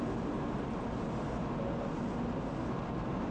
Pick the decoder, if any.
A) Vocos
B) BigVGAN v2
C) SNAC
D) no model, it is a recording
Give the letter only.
D